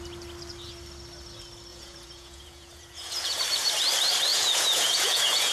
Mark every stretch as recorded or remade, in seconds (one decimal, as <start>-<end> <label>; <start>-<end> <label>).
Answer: 0.0-1.7 recorded; 1.7-3.4 remade; 3.4-4.3 recorded; 4.3-5.5 remade

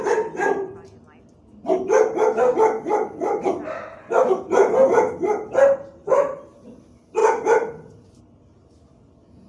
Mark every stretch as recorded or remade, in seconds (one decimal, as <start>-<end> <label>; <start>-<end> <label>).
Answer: 0.0-7.2 recorded; 7.2-8.2 remade; 8.2-9.5 recorded

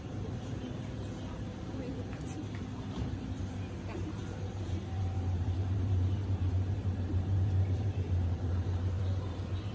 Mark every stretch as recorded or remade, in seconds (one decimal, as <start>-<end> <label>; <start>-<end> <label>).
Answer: 0.0-9.7 remade

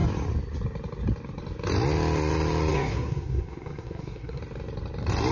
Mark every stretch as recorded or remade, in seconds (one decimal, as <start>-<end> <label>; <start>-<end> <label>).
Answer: 0.0-2.7 recorded; 2.7-4.4 remade; 4.4-5.3 recorded

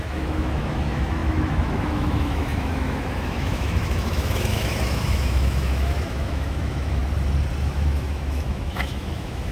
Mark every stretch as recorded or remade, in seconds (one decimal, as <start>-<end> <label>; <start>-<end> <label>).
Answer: 0.0-7.0 remade; 7.0-7.6 recorded; 7.6-9.5 remade

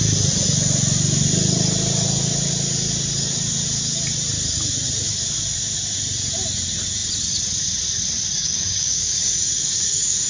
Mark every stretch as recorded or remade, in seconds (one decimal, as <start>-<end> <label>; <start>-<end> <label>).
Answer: 0.0-8.4 recorded; 8.4-10.3 remade

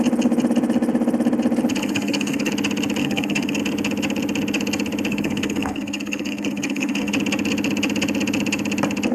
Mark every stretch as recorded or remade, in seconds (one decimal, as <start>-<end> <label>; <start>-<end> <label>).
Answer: 0.0-1.8 recorded; 1.8-2.5 remade; 2.5-3.0 recorded; 3.0-3.6 remade; 3.6-5.1 recorded; 5.1-7.1 remade; 7.1-9.1 recorded